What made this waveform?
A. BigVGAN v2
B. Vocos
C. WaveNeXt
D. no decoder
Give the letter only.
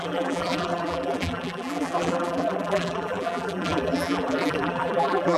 A